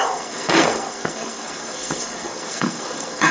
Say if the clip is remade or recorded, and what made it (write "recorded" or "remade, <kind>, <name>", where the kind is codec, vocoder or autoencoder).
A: remade, codec, SNAC